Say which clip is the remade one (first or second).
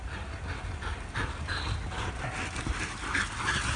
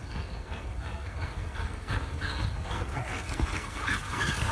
second